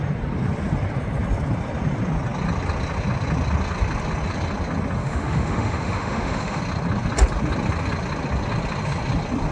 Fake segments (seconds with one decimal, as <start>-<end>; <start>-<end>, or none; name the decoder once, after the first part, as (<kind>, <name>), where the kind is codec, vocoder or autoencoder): 5.0-6.6 (autoencoder, DAC-VAE)